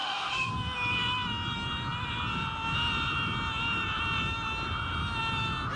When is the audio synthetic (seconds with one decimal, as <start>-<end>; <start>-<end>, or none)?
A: 0.0-0.5